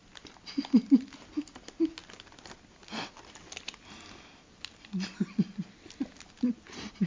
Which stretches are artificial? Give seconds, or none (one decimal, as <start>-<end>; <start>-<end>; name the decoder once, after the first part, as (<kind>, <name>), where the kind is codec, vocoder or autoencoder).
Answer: none